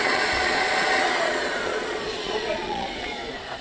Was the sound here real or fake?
fake